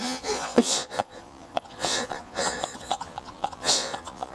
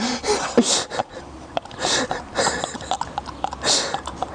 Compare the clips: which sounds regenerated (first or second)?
first